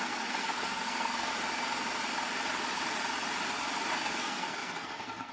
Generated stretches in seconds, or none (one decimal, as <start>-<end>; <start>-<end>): 0.0-1.3; 3.9-5.3